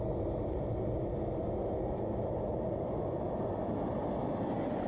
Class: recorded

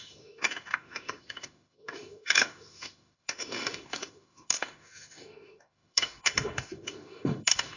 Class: remade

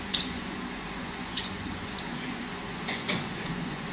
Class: remade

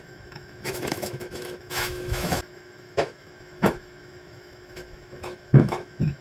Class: remade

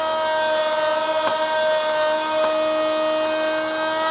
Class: recorded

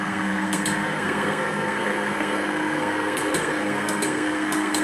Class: remade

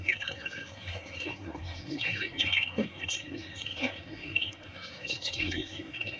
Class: remade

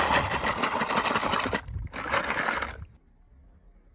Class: recorded